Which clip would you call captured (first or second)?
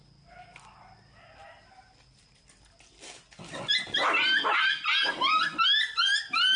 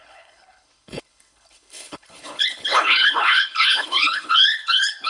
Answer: first